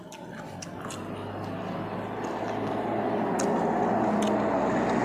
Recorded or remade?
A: recorded